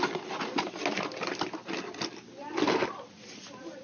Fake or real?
real